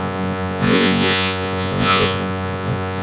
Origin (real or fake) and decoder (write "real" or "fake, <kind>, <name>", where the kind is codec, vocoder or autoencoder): fake, vocoder, Vocos